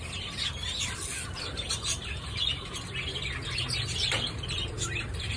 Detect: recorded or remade recorded